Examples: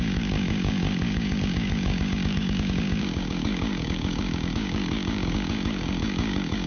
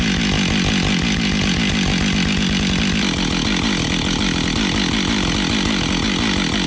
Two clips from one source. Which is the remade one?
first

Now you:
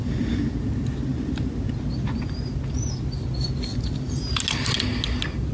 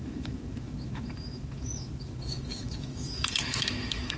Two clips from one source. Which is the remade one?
second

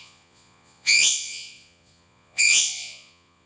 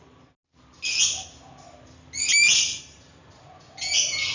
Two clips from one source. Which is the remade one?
first